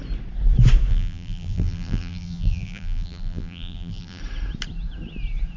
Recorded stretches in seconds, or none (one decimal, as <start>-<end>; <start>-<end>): 0.0-0.9; 4.2-5.6